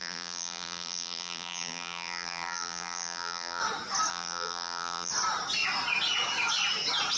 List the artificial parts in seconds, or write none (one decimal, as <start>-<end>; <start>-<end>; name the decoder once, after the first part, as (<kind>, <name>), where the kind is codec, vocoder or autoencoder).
0.0-3.6 (vocoder, BigVGAN v2); 4.1-5.1